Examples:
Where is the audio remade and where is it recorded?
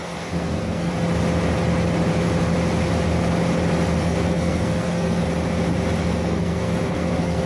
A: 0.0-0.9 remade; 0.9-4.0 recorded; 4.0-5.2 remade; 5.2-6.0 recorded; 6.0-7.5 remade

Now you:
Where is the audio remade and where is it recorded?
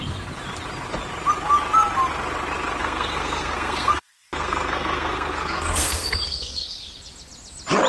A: 0.0-2.8 recorded; 2.8-6.9 remade; 6.9-7.9 recorded